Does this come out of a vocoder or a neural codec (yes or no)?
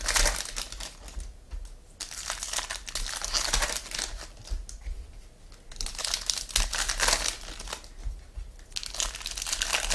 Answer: no